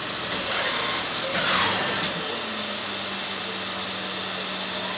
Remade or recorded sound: recorded